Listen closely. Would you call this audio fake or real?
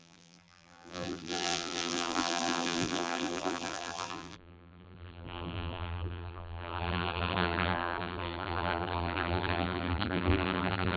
fake